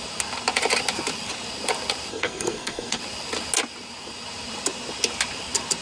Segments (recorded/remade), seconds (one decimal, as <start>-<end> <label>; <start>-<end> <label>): 0.0-2.1 recorded; 2.1-3.0 remade; 3.0-5.8 recorded